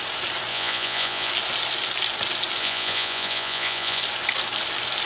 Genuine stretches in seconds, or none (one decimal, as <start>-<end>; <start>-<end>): 0.0-0.5; 1.3-2.6; 4.0-5.1